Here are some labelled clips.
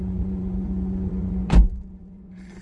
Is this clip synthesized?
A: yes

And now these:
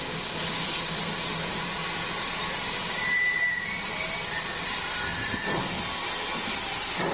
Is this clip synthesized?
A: no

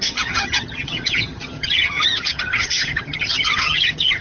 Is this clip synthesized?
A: yes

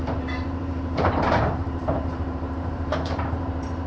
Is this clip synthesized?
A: yes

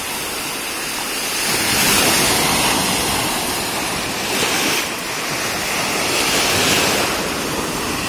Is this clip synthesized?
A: no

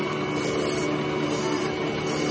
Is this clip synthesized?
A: no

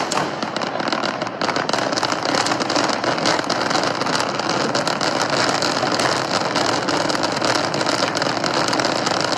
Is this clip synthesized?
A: no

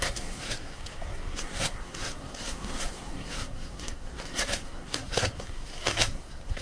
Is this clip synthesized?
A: yes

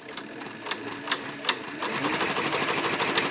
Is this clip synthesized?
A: no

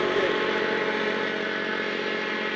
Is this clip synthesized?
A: no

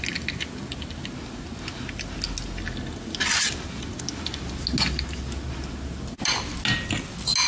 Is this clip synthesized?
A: no